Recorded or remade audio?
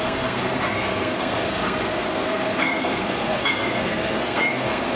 remade